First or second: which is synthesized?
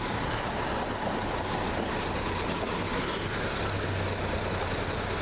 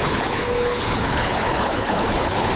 second